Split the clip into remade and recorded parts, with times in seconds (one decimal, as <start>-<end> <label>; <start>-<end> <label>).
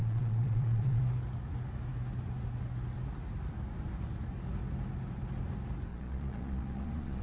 0.0-1.0 remade; 1.0-5.9 recorded; 5.9-7.2 remade